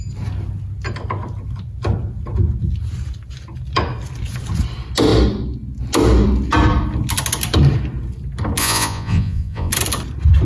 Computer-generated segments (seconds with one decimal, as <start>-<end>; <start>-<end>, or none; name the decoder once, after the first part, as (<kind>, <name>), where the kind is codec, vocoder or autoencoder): 8.6-9.7 (vocoder, Vocos)